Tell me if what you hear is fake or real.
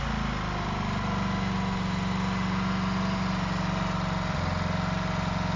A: real